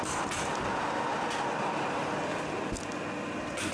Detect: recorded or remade recorded